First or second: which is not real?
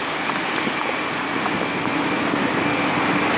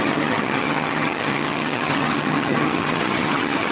second